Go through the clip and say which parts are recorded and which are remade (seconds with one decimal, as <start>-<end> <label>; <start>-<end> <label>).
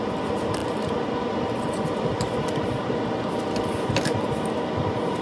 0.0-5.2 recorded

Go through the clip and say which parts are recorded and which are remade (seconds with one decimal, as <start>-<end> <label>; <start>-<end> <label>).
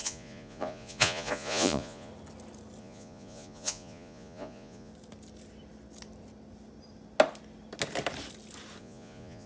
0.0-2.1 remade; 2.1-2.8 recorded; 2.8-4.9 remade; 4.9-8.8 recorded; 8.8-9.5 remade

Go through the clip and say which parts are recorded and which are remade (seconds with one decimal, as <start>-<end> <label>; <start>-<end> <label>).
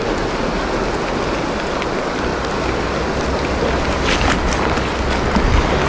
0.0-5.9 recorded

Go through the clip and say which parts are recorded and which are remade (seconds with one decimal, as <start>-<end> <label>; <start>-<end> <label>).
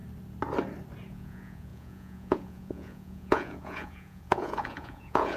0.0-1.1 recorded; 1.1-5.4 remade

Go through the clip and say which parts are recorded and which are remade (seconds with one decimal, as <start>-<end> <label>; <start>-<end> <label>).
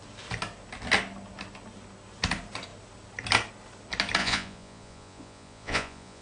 0.0-4.2 recorded; 4.2-6.2 remade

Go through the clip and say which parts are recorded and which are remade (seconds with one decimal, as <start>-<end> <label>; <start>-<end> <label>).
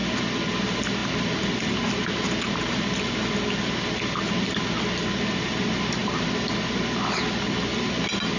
0.0-8.4 recorded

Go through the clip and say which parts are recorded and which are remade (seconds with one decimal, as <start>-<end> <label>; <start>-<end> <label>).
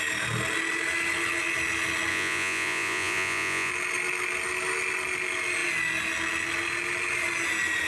0.0-2.1 recorded; 2.1-3.7 remade; 3.7-7.9 recorded